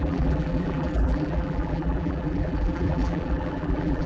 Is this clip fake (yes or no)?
yes